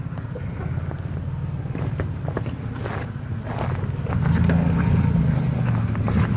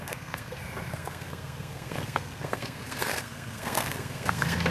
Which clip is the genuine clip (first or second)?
first